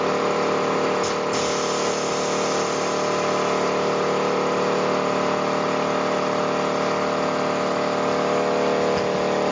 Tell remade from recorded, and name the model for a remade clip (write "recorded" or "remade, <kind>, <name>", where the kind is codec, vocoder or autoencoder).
recorded